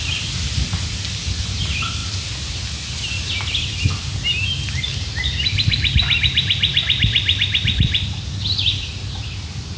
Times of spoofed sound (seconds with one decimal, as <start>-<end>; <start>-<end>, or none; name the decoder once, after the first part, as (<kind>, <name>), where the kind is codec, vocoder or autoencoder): none